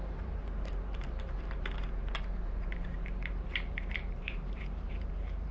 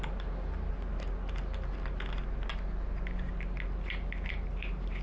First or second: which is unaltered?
second